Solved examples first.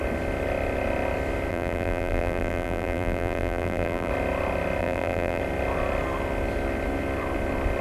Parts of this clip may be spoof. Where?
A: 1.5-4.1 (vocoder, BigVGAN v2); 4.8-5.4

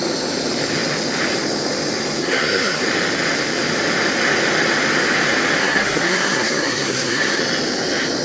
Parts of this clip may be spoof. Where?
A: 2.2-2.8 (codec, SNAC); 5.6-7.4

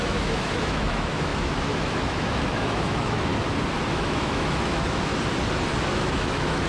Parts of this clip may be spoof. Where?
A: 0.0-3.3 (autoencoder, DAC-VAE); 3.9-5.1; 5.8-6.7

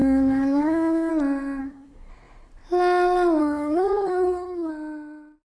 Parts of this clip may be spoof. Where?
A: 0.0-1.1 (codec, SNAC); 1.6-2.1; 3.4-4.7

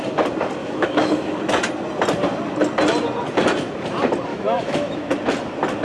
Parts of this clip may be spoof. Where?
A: 0.6-1.4 (autoencoder, DAC-VAE); 4.3-5.1

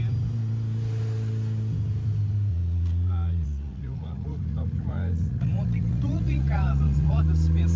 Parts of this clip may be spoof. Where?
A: 2.5-7.2 (vocoder, Vocos)